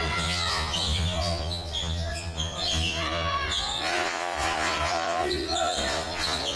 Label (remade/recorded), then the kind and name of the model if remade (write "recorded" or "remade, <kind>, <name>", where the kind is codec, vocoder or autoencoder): remade, vocoder, Vocos